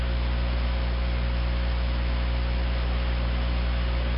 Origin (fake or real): real